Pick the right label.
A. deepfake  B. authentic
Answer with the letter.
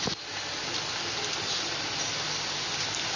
B